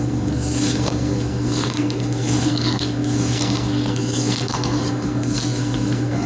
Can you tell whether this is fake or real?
fake